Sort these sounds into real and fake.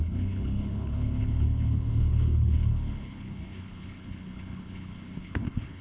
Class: fake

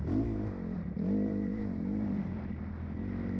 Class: real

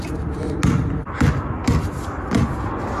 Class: real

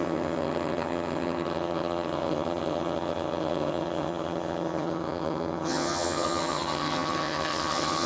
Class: fake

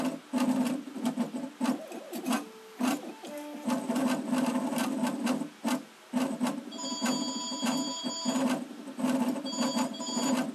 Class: real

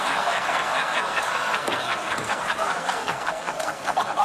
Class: fake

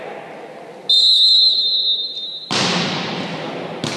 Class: real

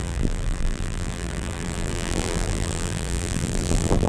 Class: fake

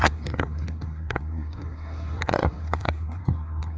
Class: fake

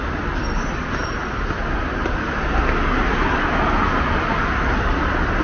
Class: real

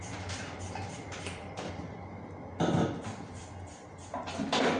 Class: real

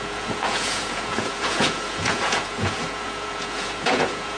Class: fake